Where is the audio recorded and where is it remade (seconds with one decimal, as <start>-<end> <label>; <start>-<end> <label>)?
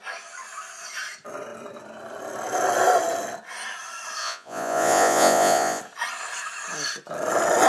0.0-4.2 recorded; 4.2-5.8 remade; 5.8-7.7 recorded